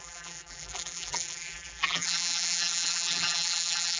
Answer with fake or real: fake